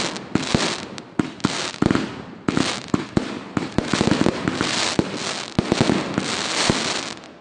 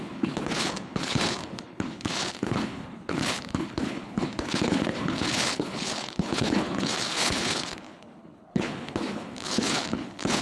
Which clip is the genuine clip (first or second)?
first